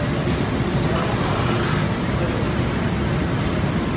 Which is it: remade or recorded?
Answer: recorded